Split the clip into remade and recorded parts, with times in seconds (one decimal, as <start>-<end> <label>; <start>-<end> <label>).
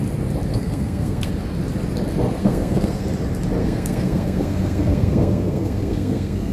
0.0-0.5 recorded; 0.5-1.3 remade; 1.3-2.4 recorded; 2.4-3.0 remade; 3.0-3.6 recorded; 3.6-6.5 remade